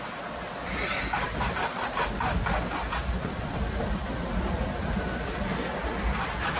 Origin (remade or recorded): recorded